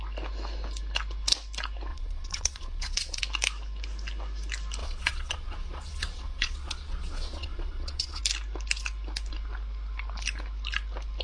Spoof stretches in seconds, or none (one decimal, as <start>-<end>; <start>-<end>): 1.9-3.2; 4.8-8.2